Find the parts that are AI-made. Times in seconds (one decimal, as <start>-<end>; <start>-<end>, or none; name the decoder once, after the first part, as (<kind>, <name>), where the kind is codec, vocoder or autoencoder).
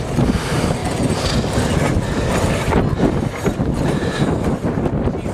none